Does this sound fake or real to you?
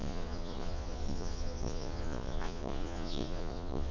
fake